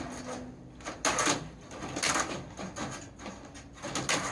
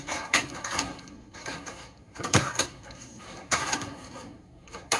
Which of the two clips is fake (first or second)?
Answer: second